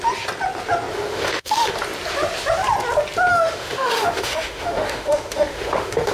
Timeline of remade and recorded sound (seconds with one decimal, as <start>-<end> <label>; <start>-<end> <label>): 0.0-0.9 recorded; 0.9-1.7 remade; 1.7-3.3 recorded; 3.3-6.1 remade